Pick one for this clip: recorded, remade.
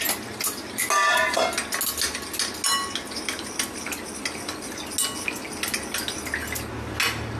recorded